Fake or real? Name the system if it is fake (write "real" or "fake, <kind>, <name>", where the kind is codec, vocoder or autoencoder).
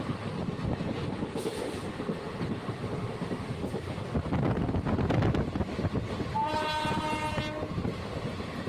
real